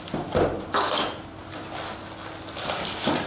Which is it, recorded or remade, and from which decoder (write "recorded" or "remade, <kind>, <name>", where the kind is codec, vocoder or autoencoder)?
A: recorded